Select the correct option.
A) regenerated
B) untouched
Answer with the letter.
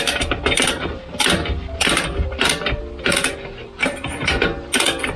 B